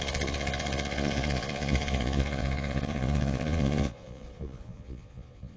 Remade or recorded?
remade